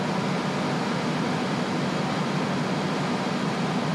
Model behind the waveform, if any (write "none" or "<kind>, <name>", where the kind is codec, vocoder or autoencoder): none